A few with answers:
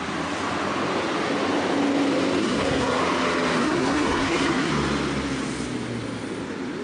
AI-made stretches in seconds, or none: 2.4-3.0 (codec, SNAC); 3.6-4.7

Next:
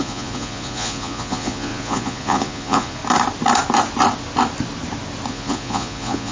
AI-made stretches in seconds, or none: 0.0-3.0 (vocoder, Vocos); 5.3-6.3

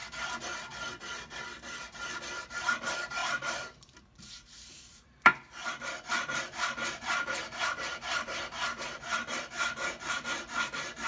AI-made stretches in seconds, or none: 2.2-5.3 (vocoder, BigVGAN v2); 6.1-11.1